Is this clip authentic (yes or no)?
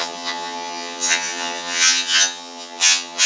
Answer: no